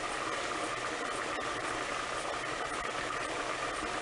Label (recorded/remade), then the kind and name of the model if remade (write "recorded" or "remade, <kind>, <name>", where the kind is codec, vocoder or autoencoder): recorded